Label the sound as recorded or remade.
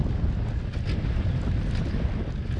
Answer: recorded